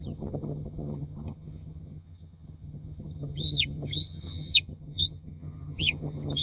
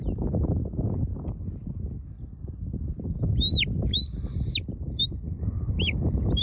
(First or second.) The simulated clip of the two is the first